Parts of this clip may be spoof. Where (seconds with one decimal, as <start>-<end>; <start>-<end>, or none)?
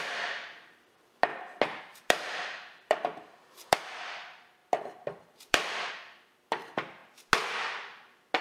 0.0-1.3; 1.8-7.0